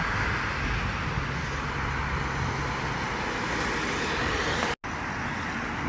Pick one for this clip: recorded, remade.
recorded